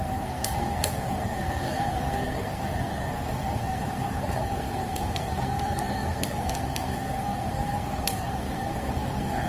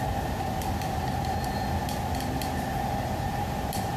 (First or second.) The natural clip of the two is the second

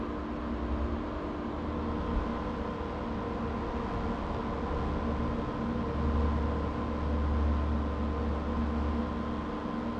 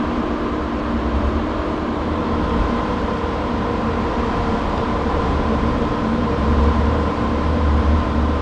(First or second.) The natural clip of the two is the first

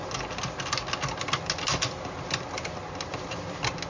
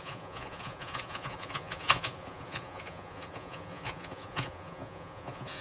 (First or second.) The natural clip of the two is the first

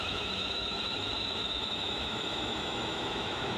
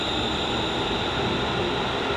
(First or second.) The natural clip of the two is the second